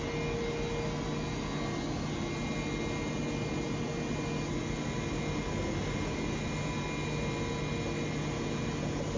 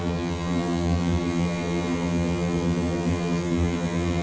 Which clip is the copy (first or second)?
second